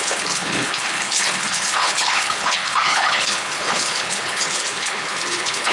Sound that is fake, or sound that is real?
fake